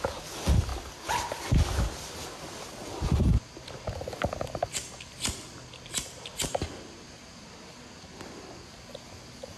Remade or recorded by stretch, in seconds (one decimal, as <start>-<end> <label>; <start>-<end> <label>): 0.0-9.6 recorded